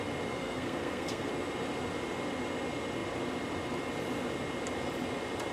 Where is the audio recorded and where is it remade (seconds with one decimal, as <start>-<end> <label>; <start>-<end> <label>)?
0.0-0.4 recorded; 0.4-1.3 remade; 1.3-5.5 recorded